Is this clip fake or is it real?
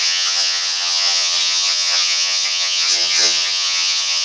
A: fake